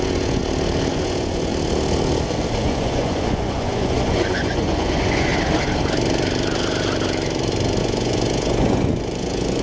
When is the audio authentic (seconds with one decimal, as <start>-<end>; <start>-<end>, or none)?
0.4-0.9; 1.5-2.6; 5.3-7.8